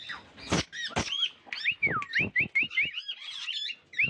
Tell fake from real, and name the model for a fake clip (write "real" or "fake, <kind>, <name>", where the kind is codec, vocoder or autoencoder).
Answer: real